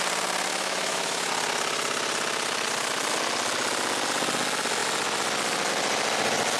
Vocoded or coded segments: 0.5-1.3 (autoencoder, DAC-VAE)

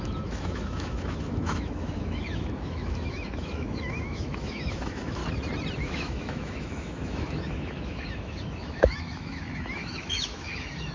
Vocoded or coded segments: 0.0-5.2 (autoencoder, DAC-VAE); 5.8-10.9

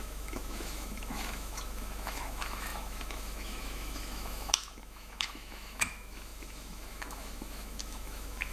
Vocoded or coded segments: 0.0-8.5 (autoencoder, DAC-VAE)